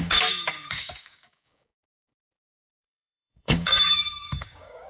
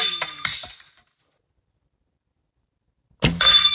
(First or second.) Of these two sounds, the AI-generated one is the first